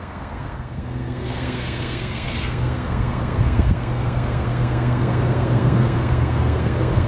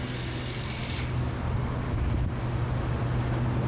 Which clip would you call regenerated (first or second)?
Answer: first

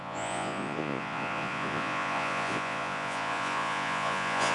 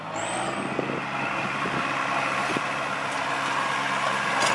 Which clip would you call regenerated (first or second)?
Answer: first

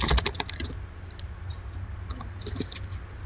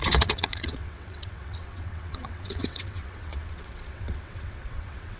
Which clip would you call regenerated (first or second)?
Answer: second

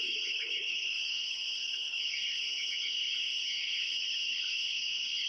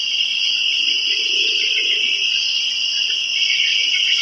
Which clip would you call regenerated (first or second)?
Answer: first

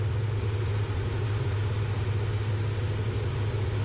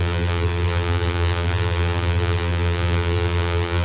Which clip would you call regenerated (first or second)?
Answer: second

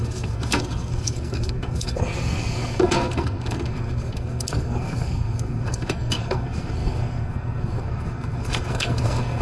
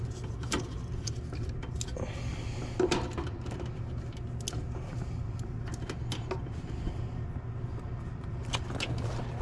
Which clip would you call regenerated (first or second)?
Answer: first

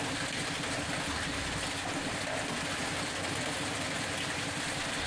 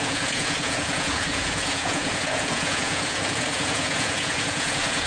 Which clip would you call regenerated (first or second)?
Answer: second